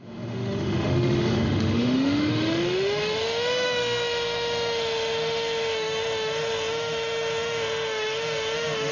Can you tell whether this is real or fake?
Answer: fake